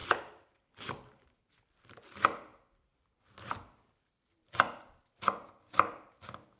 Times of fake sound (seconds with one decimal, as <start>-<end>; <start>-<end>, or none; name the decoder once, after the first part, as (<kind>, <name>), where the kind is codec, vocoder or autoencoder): none